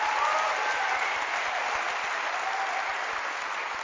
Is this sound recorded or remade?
recorded